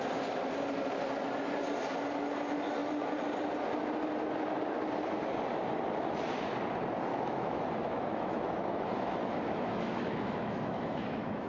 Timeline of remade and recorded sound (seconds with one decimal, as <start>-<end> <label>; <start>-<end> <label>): 0.0-7.1 recorded; 7.1-11.5 remade